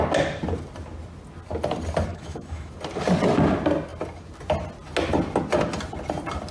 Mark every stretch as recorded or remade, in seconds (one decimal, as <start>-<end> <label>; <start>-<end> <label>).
0.0-2.1 recorded; 2.1-2.7 remade; 2.7-6.5 recorded